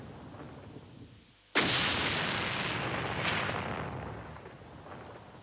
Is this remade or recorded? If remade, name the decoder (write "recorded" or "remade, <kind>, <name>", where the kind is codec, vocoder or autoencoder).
recorded